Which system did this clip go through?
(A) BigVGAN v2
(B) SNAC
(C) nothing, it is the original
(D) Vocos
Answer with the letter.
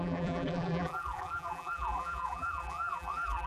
A